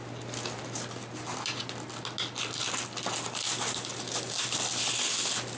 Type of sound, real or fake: real